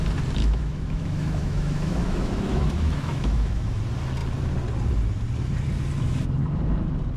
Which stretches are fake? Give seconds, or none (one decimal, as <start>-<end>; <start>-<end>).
0.4-3.8